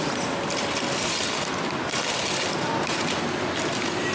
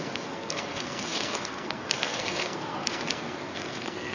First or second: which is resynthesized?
second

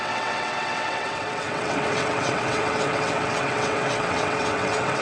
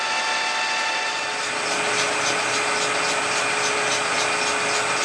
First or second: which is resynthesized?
first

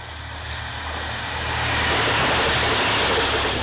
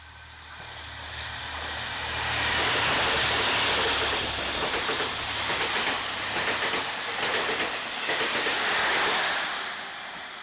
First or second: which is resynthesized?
second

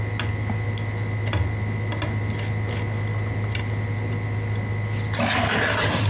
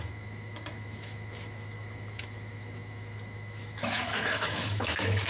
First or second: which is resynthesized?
second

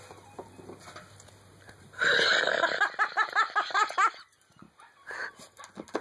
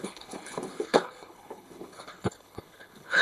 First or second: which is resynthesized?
second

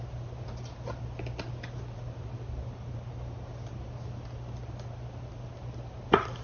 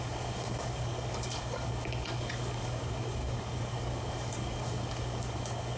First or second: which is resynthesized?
second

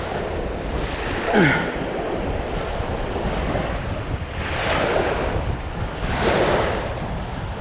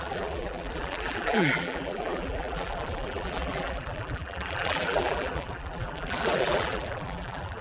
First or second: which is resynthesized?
second